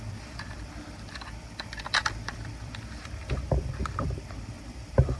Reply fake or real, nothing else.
fake